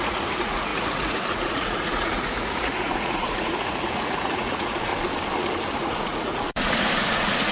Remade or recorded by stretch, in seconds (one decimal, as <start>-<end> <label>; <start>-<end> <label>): 0.0-4.9 remade; 4.9-5.8 recorded; 5.8-7.5 remade